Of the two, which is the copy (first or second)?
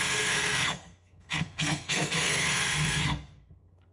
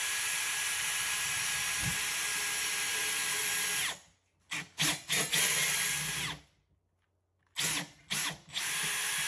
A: first